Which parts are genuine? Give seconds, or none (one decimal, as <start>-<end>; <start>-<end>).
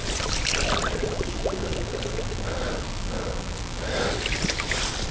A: 0.0-5.1